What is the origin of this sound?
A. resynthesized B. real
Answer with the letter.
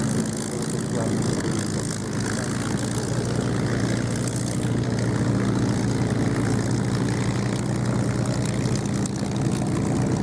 B